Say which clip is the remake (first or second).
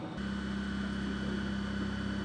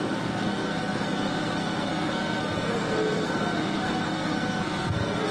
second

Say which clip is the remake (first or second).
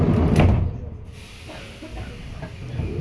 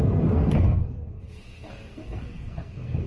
second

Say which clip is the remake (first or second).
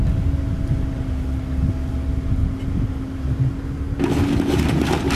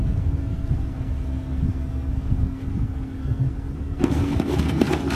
second